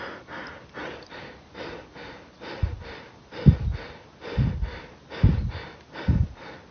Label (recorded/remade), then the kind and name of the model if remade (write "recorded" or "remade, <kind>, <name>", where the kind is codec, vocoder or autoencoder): recorded